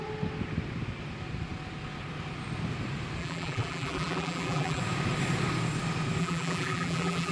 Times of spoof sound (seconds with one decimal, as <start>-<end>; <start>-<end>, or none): 3.2-4.8; 6.2-7.3